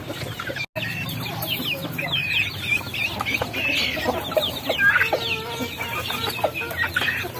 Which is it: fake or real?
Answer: real